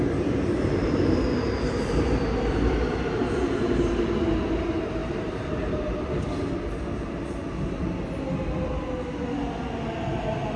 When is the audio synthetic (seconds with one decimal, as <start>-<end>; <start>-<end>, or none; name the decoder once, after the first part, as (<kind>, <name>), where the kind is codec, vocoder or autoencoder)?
0.8-1.6 (vocoder, BigVGAN v2); 5.0-6.2